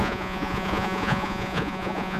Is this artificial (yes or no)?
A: yes